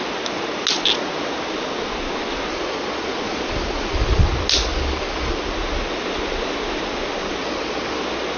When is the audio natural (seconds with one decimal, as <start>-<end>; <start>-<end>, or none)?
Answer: 0.0-2.5; 4.3-4.7; 5.4-7.4; 8.0-8.4